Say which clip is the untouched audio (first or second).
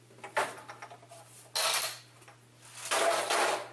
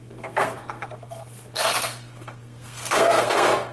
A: first